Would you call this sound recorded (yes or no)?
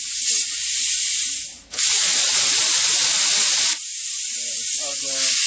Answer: yes